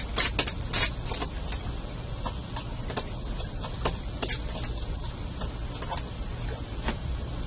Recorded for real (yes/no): yes